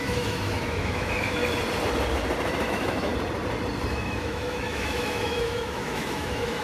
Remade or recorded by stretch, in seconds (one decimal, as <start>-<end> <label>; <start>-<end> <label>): 0.0-1.4 remade; 1.4-2.7 recorded; 2.7-3.1 remade; 3.1-3.9 recorded; 3.9-6.6 remade